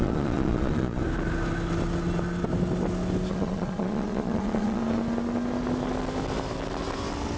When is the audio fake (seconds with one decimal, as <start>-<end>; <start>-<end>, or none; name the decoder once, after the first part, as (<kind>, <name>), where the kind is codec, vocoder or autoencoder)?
0.0-1.0 (vocoder, Vocos); 3.3-4.8